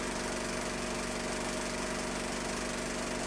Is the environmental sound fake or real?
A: real